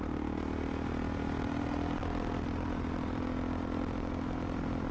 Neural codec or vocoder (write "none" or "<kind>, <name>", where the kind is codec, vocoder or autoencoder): none